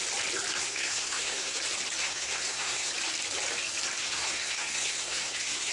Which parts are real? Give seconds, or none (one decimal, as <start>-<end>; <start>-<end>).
0.0-0.5; 1.6-2.0; 2.9-4.0